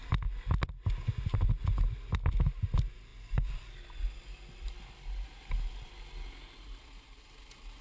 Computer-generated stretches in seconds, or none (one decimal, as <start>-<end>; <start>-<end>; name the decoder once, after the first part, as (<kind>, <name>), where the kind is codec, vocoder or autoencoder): none